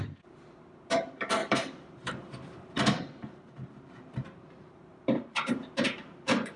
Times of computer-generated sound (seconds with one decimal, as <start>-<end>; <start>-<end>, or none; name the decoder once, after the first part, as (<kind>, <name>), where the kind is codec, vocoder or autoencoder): 0.0-6.6 (vocoder, BigVGAN v2)